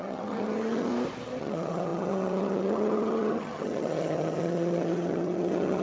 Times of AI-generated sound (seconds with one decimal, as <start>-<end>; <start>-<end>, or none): 0.0-0.9; 1.4-5.8